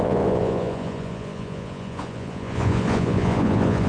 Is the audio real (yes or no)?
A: no